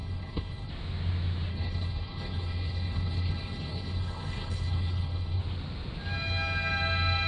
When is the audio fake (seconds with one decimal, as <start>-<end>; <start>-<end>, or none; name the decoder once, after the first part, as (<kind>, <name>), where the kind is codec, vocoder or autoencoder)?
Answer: 0.0-0.7 (codec, HILCodec); 1.5-5.4